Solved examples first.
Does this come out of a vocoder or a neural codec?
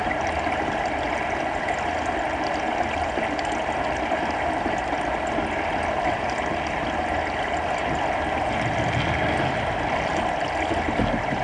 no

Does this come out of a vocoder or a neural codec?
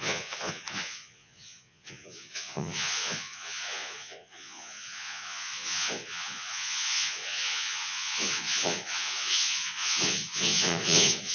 yes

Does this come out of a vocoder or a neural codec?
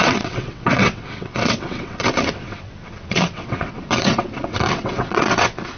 yes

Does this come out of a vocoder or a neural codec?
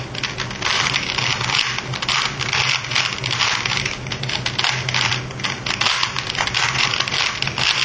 no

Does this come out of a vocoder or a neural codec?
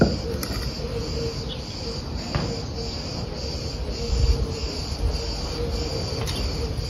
no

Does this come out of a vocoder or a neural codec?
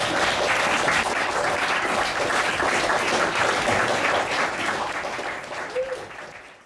no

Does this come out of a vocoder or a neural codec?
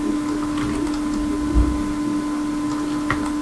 no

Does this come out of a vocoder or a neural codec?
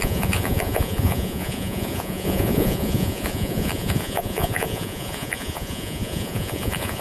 yes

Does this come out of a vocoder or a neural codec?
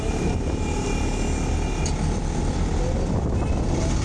no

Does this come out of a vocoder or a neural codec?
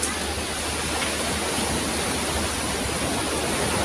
no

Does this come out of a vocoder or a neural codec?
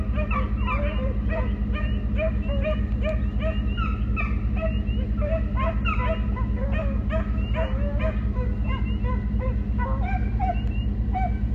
no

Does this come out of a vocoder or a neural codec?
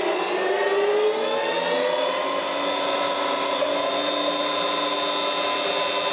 no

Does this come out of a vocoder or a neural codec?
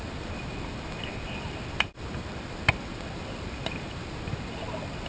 yes